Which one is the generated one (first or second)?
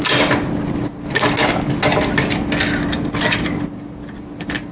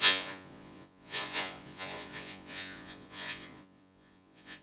second